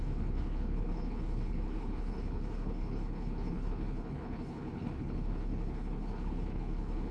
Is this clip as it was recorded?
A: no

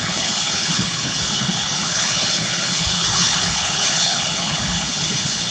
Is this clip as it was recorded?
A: no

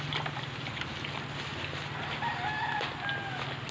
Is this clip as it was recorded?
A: yes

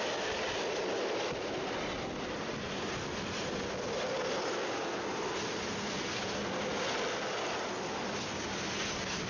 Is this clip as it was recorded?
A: yes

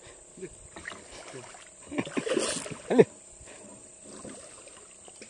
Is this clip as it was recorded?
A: yes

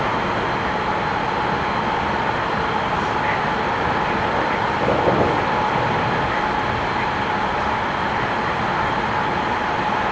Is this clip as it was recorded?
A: yes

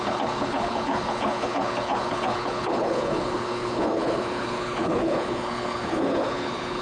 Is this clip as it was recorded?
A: no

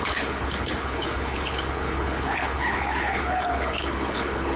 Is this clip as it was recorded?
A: no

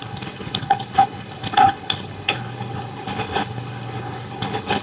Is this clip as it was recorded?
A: no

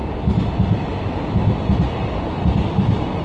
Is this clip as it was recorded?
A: yes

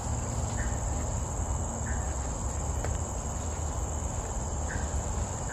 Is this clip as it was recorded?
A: yes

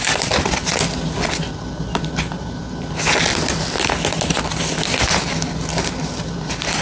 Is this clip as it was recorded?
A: yes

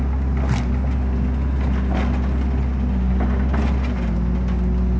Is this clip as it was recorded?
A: yes